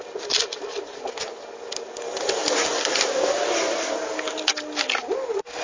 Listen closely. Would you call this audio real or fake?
real